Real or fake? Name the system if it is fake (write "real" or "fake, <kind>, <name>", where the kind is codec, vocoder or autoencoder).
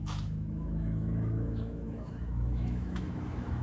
fake, autoencoder, DAC-VAE